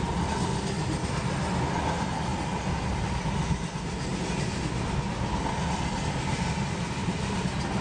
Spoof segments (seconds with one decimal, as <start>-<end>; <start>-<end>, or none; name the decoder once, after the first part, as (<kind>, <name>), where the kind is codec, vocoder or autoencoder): none